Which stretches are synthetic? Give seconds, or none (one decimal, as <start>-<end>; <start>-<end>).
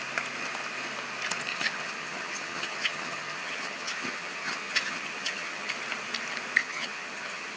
1.5-5.7; 6.6-7.6